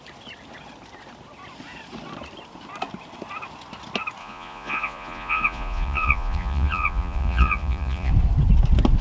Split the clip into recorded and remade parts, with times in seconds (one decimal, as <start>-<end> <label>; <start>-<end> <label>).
0.0-4.2 recorded; 4.2-8.1 remade; 8.1-9.0 recorded